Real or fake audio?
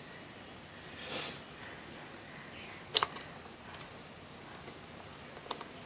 real